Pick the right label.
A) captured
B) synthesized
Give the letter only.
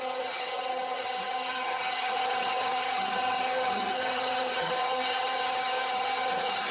B